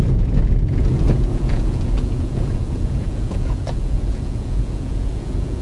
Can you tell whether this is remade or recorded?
remade